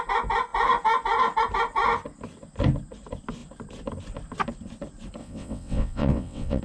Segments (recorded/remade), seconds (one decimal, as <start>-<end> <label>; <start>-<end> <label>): 0.0-5.2 recorded; 5.2-6.6 remade